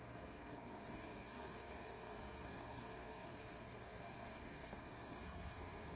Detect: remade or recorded remade